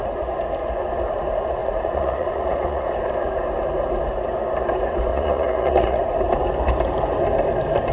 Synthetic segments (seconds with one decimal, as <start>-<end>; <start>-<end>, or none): 1.6-2.9; 5.1-6.0